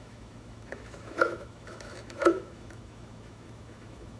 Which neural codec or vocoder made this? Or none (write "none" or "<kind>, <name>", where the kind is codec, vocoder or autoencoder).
autoencoder, DAC-VAE